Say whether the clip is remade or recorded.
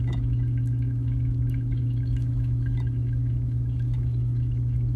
remade